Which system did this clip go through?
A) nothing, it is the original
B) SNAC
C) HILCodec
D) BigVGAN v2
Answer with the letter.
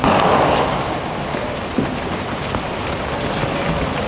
A